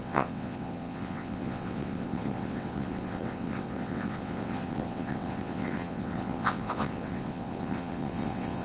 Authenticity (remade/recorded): remade